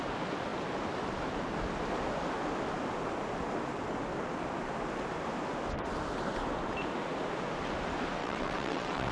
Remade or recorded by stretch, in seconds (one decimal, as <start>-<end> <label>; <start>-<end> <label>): 0.0-8.2 recorded; 8.2-9.1 remade